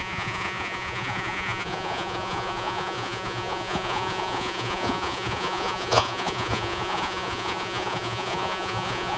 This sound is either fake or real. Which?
fake